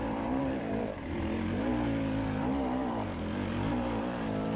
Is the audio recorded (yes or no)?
no